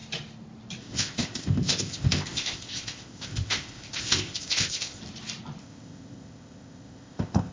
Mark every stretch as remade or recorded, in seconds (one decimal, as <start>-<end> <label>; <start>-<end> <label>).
0.0-0.8 recorded; 0.8-5.0 remade; 5.0-5.6 recorded; 5.6-7.5 remade